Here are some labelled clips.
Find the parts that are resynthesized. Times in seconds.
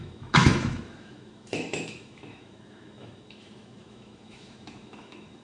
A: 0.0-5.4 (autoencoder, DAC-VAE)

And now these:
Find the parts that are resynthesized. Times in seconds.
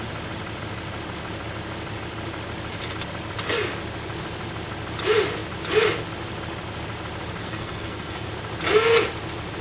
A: 7.4-8.3 (codec, SNAC)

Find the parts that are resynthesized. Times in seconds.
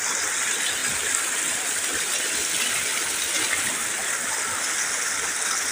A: none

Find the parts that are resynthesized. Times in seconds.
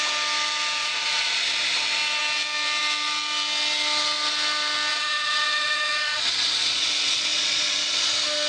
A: 0.8-1.4 (vocoder, Vocos); 4.9-8.1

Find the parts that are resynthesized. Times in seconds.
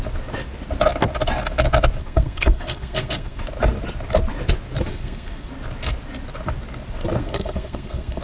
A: 2.0-3.4 (codec, SNAC); 4.9-5.5; 7.2-8.2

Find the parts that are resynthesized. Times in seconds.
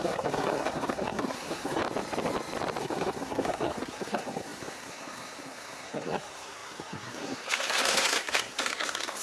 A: 0.0-1.8 (codec, SNAC); 2.8-9.2